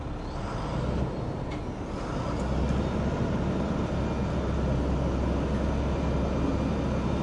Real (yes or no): yes